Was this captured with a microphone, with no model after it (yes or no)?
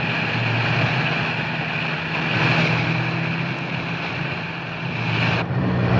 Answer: yes